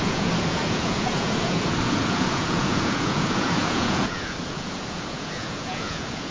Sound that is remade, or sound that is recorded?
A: remade